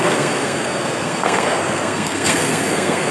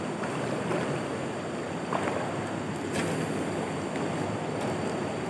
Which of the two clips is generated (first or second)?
first